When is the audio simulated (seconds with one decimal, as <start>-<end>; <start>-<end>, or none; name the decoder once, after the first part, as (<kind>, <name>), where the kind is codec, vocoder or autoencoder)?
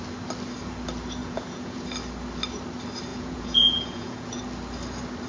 1.2-1.8 (vocoder, Vocos); 3.1-4.4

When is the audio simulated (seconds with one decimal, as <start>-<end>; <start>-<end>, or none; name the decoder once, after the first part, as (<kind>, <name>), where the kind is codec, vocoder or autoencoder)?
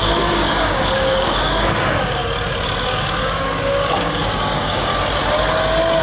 0.0-2.2 (codec, DAC); 2.8-4.9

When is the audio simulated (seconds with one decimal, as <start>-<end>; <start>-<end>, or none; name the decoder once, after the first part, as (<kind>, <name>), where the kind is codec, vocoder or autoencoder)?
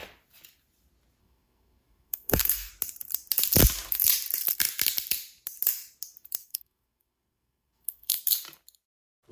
1.2-2.7 (codec, SNAC); 6.4-8.2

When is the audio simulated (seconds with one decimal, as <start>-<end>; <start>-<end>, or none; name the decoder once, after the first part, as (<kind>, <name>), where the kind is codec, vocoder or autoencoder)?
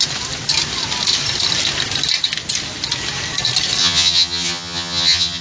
3.8-5.4 (vocoder, HiFi-GAN)